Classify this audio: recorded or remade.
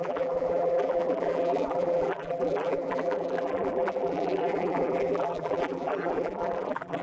remade